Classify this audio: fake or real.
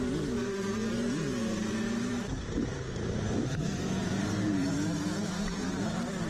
fake